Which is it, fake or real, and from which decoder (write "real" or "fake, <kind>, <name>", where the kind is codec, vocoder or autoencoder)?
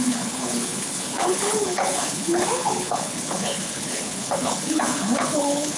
fake, codec, HILCodec